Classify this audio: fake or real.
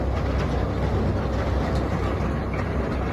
real